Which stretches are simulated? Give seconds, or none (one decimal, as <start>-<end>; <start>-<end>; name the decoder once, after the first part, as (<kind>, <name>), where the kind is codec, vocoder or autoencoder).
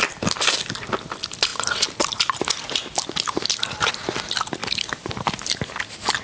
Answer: none